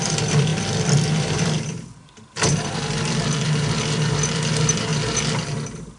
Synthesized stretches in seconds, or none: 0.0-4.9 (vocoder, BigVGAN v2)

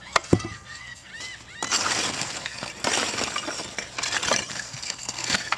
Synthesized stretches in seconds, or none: 0.0-1.1 (codec, SNAC); 2.1-2.7; 4.5-5.6

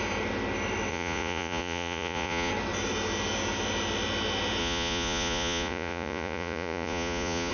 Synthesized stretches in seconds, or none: 0.9-2.5 (vocoder, Vocos); 4.6-7.5

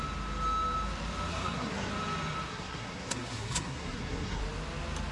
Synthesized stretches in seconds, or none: 1.3-1.9 (codec, SNAC); 2.5-4.4